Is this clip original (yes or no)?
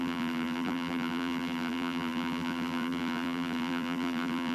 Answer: no